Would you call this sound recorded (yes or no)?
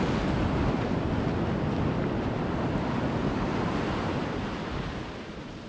yes